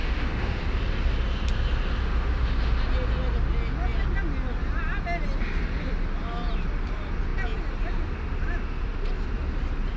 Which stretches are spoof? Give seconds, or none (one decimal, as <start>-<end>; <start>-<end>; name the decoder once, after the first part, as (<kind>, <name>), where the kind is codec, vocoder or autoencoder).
0.0-0.6 (autoencoder, DAC-VAE); 2.0-2.8